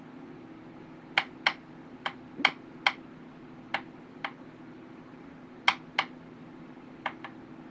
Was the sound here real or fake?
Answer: real